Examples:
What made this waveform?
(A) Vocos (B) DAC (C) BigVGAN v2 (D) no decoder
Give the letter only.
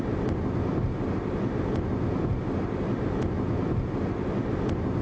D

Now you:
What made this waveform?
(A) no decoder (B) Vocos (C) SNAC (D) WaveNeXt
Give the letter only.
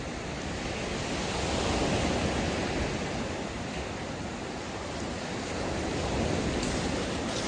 A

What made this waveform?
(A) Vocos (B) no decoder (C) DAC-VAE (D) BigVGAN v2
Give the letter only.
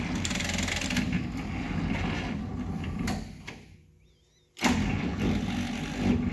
B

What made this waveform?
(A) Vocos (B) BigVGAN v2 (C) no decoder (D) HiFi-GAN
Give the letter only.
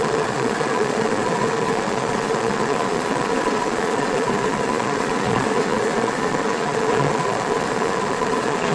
A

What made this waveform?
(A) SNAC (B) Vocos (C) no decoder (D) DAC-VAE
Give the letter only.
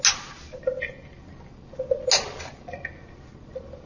C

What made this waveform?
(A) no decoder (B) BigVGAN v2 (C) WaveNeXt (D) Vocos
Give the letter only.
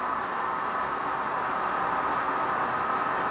A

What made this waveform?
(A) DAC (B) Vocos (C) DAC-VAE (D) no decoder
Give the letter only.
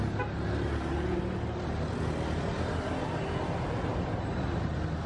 D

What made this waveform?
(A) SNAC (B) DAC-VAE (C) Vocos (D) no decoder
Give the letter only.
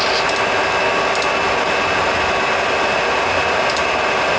D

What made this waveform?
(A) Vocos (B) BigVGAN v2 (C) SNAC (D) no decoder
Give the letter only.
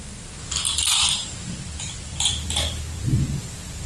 D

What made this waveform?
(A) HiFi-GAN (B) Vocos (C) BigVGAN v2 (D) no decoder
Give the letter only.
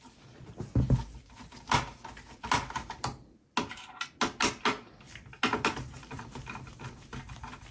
D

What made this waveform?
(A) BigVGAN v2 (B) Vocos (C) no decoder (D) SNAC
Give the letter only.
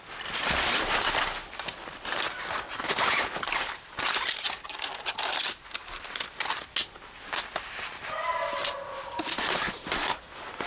C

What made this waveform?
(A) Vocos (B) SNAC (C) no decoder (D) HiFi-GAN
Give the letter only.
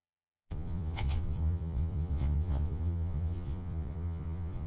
A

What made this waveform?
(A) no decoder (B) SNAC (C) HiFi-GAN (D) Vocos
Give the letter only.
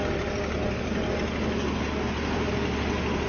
A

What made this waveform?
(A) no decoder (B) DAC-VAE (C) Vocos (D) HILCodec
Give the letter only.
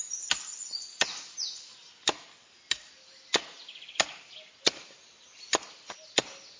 A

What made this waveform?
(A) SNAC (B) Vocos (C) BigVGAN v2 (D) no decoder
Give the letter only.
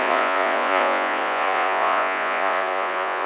B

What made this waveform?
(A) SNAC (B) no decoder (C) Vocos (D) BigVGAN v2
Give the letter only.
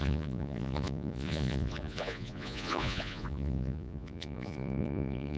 C